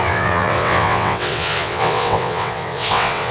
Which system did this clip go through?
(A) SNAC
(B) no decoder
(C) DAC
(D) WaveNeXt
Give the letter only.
D